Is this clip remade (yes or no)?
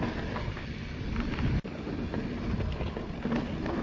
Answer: no